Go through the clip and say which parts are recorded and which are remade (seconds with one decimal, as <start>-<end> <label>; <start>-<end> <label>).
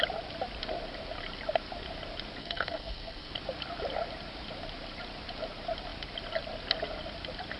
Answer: 0.0-2.4 recorded; 2.4-3.3 remade; 3.3-7.6 recorded